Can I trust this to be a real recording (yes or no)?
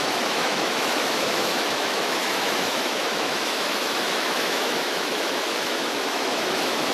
no